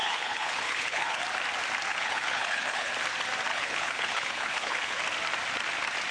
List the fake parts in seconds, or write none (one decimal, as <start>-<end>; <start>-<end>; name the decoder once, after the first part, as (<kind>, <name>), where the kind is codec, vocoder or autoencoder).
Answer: 0.0-1.2 (codec, HILCodec); 1.9-2.9; 3.5-5.0